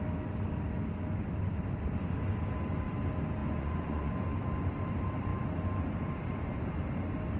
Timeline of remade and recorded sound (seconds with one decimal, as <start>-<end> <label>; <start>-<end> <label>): 0.0-3.4 recorded; 3.4-4.1 remade; 4.1-7.4 recorded